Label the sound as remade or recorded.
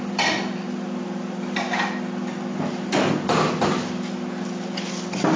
recorded